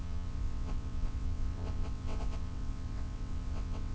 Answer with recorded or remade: remade